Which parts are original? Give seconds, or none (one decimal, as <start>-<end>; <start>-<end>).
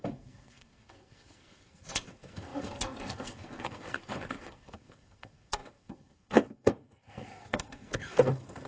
none